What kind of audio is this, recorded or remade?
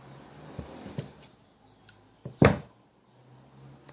recorded